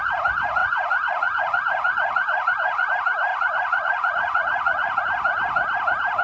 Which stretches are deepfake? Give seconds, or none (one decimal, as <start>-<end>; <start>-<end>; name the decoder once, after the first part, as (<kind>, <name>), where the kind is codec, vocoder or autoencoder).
0.6-2.9 (vocoder, Vocos); 3.3-5.0